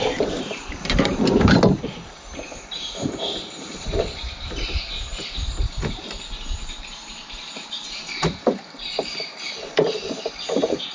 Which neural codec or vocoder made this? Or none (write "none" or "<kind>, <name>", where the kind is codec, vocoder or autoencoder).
vocoder, BigVGAN v2